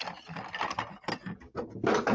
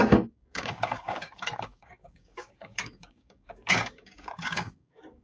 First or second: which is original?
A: first